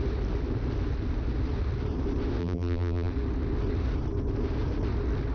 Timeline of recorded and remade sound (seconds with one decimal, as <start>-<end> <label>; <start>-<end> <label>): 0.0-2.4 recorded; 2.4-3.1 remade; 3.1-5.3 recorded